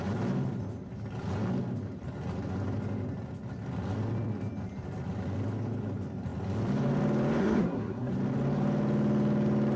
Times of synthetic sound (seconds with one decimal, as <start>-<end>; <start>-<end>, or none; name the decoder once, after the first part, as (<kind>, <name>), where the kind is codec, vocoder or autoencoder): 7.4-8.1 (codec, SNAC)